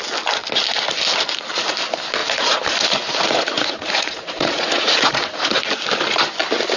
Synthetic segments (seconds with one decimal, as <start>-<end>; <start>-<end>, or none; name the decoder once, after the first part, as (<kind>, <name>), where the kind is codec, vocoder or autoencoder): 2.2-5.7 (vocoder, Vocos)